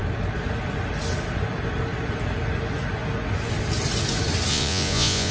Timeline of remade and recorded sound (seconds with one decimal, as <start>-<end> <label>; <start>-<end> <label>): 0.0-4.5 recorded; 4.5-5.3 remade